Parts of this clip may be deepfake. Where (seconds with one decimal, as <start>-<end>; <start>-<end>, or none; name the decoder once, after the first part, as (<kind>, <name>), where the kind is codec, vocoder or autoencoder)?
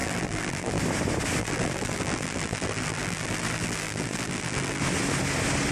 0.0-0.8 (vocoder, BigVGAN v2); 1.4-4.8